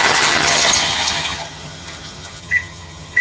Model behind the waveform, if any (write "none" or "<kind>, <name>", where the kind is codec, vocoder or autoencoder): vocoder, HiFi-GAN